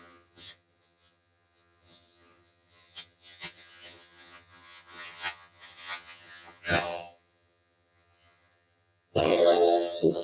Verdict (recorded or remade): remade